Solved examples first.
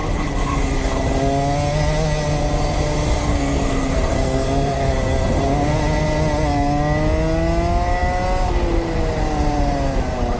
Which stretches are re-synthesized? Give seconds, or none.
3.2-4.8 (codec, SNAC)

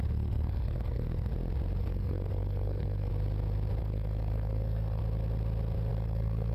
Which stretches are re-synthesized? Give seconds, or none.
0.0-1.3 (codec, SNAC); 1.8-3.1; 3.8-5.0; 5.9-6.5

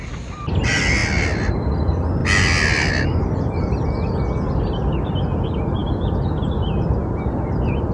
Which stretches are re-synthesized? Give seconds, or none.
none

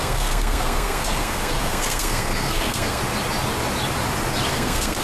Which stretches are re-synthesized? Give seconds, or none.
0.0-3.0 (codec, SNAC); 4.5-5.0